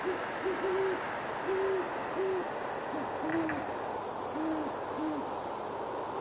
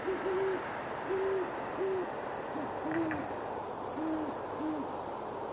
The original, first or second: first